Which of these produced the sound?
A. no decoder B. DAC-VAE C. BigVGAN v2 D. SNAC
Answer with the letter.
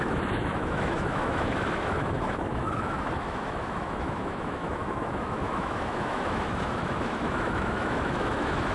B